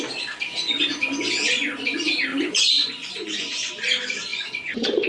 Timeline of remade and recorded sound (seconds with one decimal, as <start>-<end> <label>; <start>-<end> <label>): 0.0-2.3 recorded; 2.3-3.7 remade; 3.7-4.3 recorded; 4.3-5.1 remade